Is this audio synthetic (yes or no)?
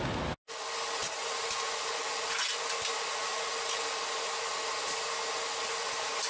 no